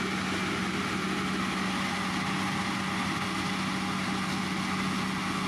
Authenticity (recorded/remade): recorded